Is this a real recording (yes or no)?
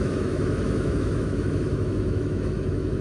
no